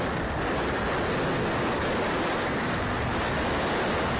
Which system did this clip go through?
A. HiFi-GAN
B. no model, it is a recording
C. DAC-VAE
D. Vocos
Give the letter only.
B